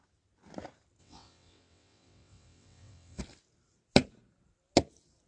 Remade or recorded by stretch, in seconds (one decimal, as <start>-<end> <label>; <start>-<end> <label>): 0.0-1.0 recorded; 1.0-3.2 remade; 3.2-5.3 recorded